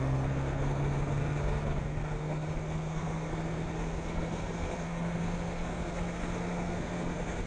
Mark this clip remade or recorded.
remade